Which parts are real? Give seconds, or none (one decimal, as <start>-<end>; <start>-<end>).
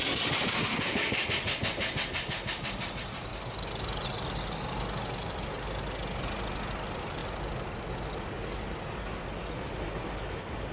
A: 0.0-10.7